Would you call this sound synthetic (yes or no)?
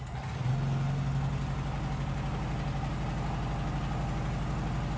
no